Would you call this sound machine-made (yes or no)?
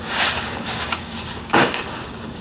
yes